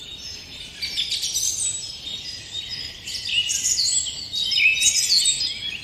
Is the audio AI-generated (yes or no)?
no